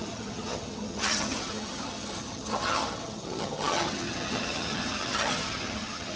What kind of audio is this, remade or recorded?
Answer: remade